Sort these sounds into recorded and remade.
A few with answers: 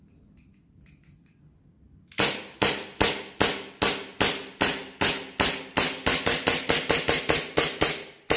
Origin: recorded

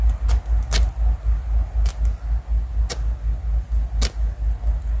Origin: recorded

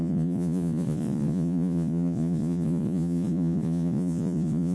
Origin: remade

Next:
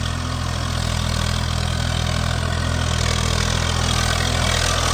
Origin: recorded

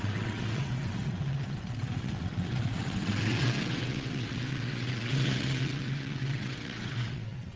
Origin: remade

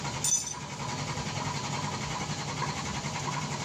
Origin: recorded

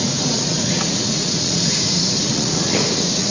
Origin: remade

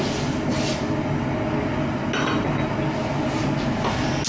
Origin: recorded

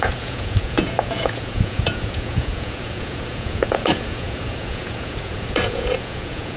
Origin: remade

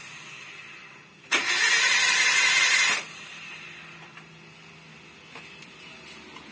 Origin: recorded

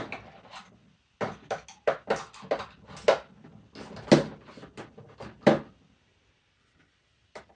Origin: recorded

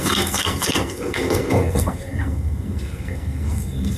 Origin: remade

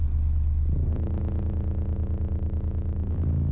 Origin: recorded